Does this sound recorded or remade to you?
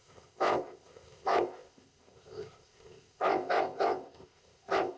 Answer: remade